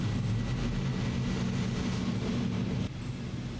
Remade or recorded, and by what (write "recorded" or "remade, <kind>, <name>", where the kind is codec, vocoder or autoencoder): recorded